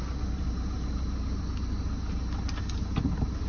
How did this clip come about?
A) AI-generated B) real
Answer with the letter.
B